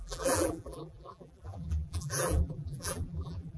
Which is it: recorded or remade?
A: remade